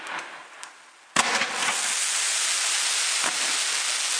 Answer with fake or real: real